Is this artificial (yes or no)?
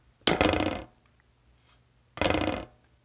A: no